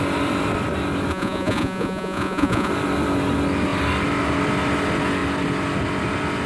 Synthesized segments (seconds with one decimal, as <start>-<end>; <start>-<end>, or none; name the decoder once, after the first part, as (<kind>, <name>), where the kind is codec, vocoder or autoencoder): 1.1-2.7 (vocoder, Vocos)